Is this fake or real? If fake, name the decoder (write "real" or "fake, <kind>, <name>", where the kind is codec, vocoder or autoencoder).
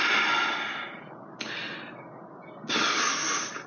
real